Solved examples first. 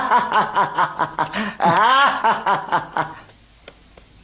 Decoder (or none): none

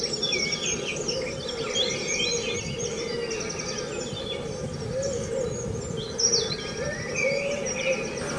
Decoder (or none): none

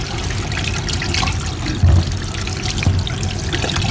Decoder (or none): none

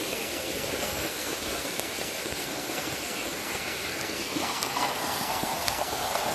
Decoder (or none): codec, SNAC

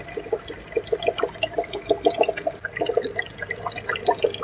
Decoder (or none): none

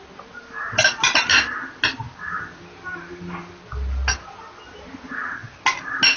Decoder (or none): none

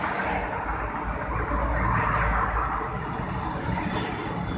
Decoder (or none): none